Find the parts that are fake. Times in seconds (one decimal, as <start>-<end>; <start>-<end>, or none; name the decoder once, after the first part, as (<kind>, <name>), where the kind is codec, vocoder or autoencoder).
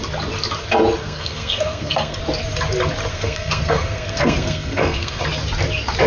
1.0-2.2 (codec, SNAC); 3.1-5.2